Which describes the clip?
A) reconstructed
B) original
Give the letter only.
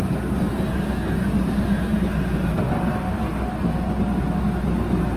B